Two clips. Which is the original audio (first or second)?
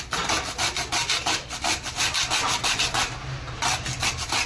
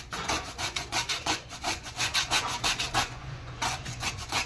first